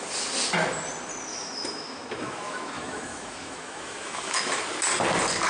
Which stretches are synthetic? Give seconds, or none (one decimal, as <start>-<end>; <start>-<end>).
1.3-4.6